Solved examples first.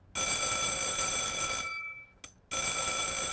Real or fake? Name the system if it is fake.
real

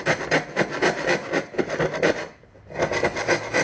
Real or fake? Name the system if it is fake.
real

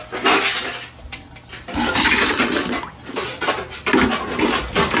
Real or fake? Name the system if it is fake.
real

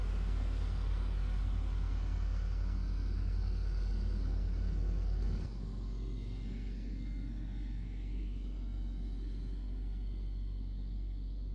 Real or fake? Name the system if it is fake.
fake, codec, SNAC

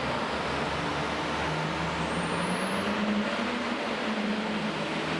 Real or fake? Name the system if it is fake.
real